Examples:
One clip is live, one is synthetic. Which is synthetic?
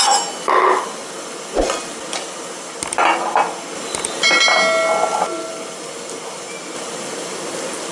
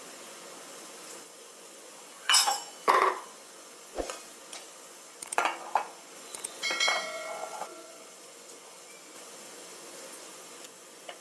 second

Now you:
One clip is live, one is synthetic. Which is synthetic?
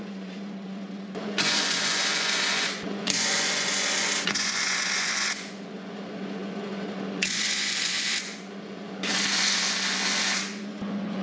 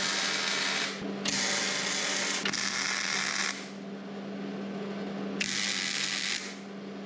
first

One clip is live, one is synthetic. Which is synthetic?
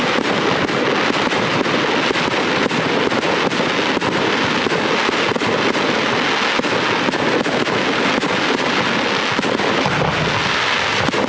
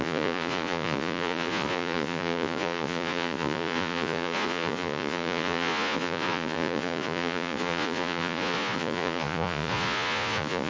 second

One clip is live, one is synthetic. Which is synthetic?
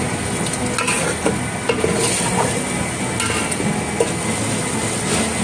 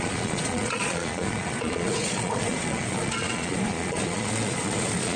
second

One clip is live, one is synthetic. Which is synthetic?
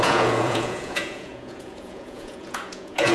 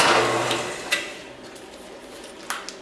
first